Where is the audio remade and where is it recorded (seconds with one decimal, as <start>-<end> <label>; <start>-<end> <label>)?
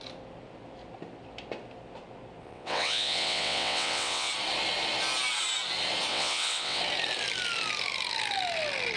0.0-2.4 recorded; 2.4-4.3 remade; 4.3-6.1 recorded; 6.1-6.8 remade; 6.8-9.0 recorded